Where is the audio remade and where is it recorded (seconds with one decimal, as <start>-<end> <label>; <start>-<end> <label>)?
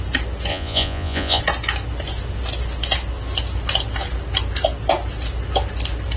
0.0-0.5 recorded; 0.5-1.4 remade; 1.4-6.2 recorded